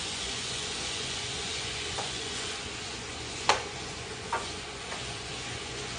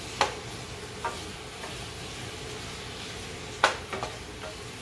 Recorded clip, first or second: second